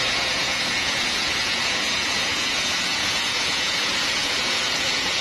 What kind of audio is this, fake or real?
fake